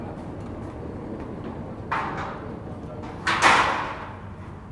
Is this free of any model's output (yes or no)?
yes